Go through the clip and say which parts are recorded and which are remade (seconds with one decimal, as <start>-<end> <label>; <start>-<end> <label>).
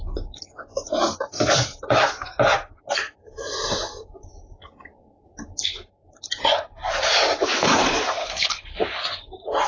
0.0-8.2 recorded; 8.2-8.8 remade; 8.8-9.7 recorded